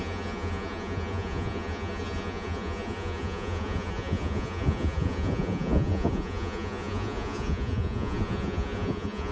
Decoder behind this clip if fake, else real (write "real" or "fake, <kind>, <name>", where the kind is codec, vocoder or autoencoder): fake, vocoder, Vocos